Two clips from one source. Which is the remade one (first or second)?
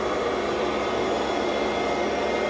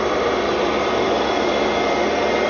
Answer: second